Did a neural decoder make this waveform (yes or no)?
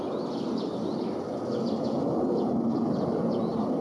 no